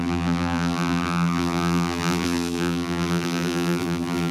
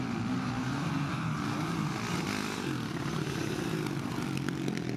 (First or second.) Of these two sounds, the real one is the second